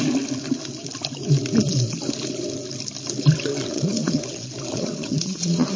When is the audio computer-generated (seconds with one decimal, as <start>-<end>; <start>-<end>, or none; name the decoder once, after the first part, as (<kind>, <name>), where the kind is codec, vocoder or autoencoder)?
3.5-5.8 (vocoder, Vocos)